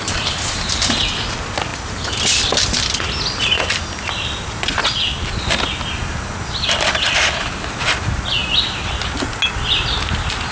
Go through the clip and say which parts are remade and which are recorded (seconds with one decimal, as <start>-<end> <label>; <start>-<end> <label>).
0.0-10.5 recorded